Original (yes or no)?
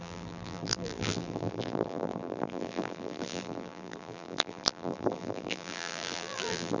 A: no